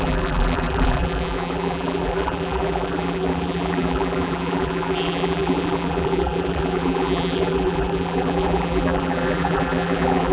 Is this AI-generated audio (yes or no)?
yes